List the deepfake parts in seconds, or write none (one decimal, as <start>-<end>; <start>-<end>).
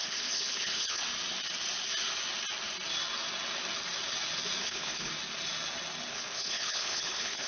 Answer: 0.0-1.0; 4.6-5.1; 6.1-7.5